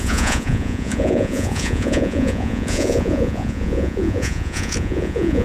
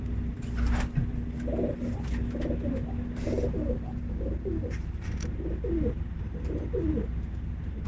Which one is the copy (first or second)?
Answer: first